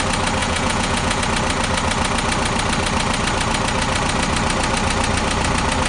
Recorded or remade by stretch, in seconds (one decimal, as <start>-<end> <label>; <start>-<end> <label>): 0.0-0.4 recorded; 0.4-1.2 remade; 1.2-5.9 recorded